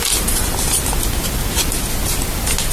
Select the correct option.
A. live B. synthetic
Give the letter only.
A